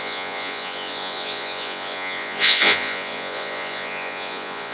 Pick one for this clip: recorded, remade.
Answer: remade